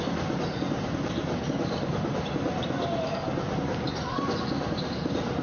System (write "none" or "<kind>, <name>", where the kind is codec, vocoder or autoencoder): none